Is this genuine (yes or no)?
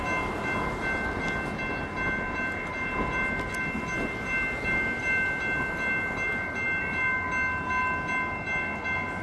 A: yes